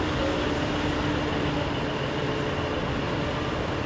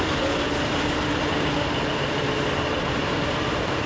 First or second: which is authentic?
first